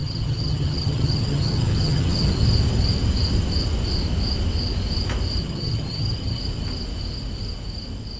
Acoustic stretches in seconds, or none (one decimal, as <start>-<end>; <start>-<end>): 2.3-5.4; 6.4-8.2